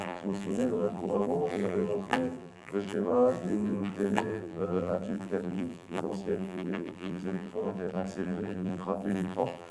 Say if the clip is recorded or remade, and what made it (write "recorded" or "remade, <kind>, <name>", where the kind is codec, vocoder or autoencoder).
remade, vocoder, BigVGAN v2